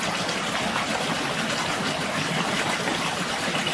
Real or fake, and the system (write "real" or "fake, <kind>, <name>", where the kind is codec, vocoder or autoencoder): real